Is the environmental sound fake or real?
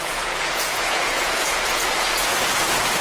fake